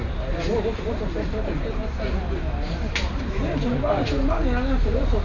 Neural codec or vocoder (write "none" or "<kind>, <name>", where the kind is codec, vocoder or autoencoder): none